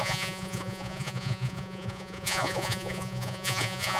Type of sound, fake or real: fake